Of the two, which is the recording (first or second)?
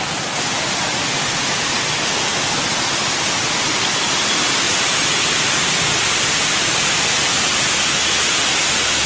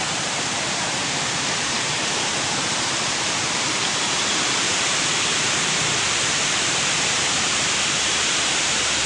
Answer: first